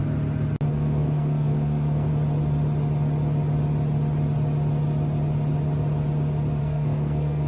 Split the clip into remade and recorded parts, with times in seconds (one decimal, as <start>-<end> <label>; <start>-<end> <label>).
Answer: 0.0-0.7 recorded; 0.7-2.1 remade; 2.1-6.6 recorded; 6.6-7.5 remade